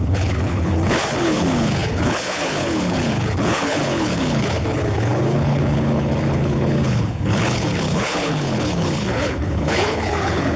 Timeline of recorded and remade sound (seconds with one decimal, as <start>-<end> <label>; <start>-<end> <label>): 0.0-10.6 remade